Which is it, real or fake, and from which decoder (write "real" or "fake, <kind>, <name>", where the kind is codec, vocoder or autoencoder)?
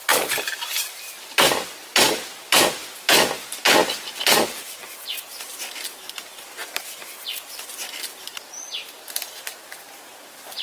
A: real